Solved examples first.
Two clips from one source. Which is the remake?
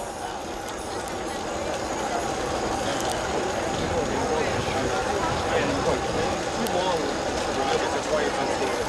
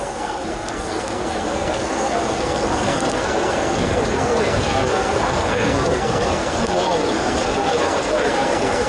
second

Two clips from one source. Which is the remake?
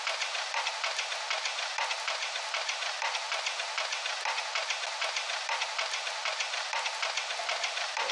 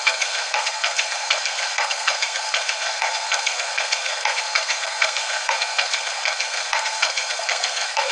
second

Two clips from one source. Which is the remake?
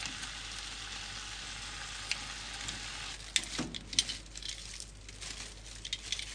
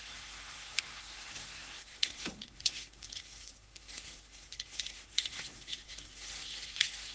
second